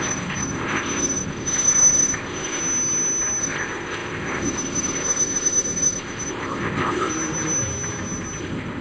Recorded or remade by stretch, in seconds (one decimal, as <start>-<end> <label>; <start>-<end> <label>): 0.0-2.6 remade; 2.6-3.4 recorded; 3.4-7.1 remade; 7.1-8.4 recorded; 8.4-8.8 remade